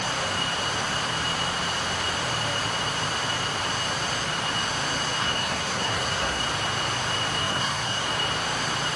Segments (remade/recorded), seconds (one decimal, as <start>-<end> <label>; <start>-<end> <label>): 0.0-5.2 recorded; 5.2-6.4 remade; 6.4-7.4 recorded; 7.4-8.1 remade; 8.1-9.0 recorded